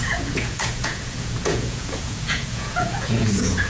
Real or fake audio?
fake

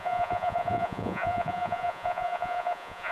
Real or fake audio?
fake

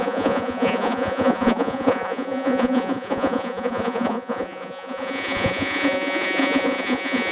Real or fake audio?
fake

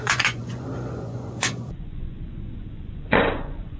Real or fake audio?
fake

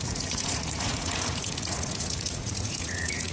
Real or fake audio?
fake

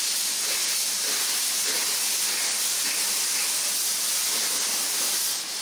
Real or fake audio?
real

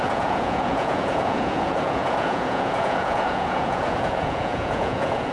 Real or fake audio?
fake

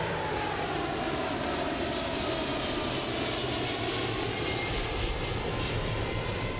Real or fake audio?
real